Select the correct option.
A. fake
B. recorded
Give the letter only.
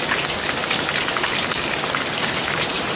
B